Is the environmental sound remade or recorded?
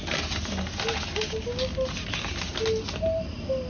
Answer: recorded